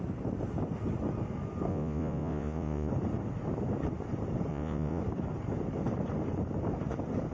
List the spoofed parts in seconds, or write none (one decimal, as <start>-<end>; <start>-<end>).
1.7-2.9; 4.5-5.0